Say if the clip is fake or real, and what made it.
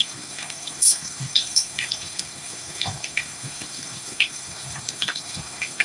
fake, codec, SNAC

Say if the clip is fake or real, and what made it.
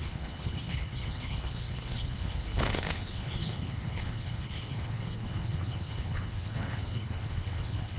fake, codec, HILCodec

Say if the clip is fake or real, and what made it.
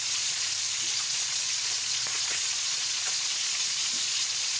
fake, vocoder, Vocos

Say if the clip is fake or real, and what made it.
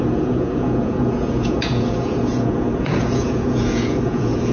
fake, vocoder, Vocos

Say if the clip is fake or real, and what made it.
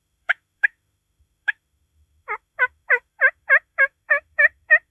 fake, autoencoder, DAC-VAE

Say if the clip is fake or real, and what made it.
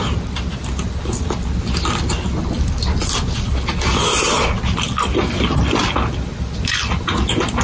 real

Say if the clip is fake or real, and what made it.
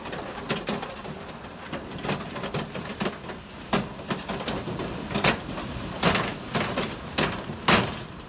real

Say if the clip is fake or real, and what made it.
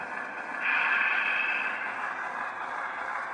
real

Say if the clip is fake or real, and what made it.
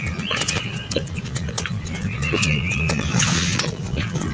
fake, vocoder, Vocos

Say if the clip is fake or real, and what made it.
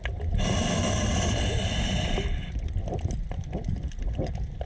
real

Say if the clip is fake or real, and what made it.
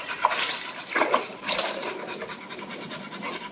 real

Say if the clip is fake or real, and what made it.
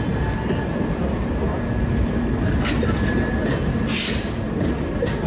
real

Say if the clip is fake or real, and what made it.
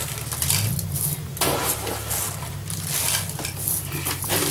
real